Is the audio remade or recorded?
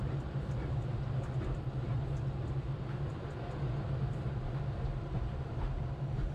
remade